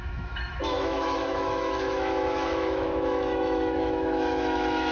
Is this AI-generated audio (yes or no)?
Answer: yes